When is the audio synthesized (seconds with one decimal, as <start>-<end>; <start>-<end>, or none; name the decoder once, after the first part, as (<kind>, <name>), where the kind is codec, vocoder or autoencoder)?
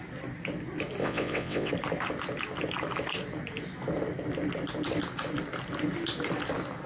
1.0-1.7 (vocoder, WaveNeXt)